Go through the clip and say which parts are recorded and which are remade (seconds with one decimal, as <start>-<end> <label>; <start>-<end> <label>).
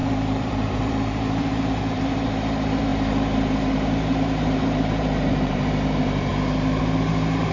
0.0-6.3 remade; 6.3-6.8 recorded; 6.8-7.5 remade